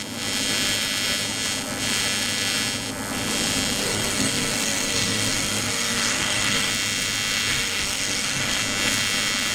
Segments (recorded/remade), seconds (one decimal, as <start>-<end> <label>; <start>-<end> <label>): 0.0-3.8 recorded; 3.8-6.7 remade; 6.7-7.5 recorded; 7.5-8.6 remade; 8.6-9.5 recorded